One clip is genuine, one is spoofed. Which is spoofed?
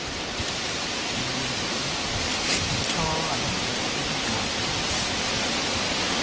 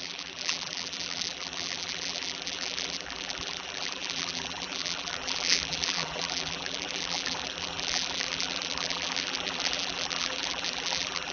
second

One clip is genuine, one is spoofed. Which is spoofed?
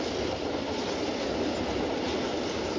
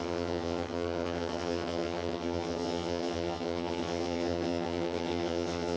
second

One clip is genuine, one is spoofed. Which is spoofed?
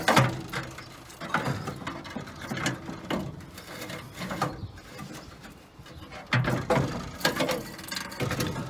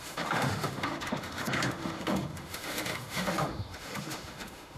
second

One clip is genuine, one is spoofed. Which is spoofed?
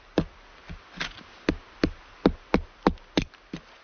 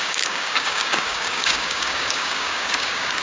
second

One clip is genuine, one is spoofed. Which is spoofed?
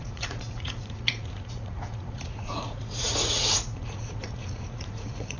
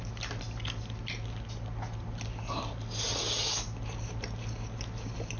first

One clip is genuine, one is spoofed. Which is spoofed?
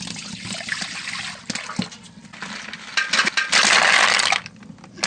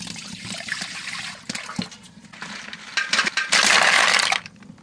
second